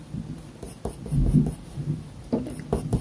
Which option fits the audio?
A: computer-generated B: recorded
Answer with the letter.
B